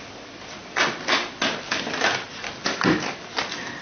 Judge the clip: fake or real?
real